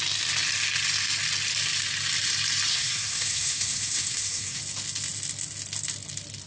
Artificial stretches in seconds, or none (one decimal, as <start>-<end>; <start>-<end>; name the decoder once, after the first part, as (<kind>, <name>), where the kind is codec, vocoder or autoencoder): 2.7-4.6 (codec, SNAC)